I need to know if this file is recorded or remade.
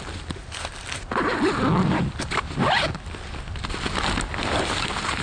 remade